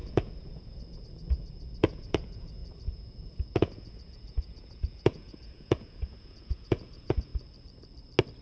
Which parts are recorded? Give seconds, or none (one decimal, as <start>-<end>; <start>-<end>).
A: 7.3-8.4